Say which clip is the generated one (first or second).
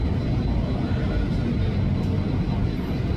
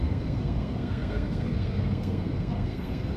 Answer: second